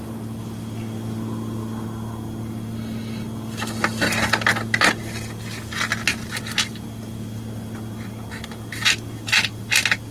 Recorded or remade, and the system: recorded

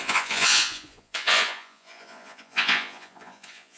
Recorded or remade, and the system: remade, vocoder, Vocos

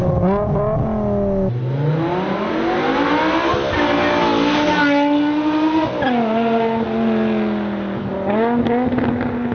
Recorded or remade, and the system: recorded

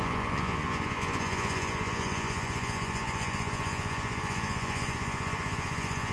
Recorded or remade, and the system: remade, vocoder, Vocos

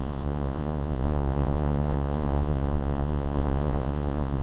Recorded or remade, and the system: remade, vocoder, Vocos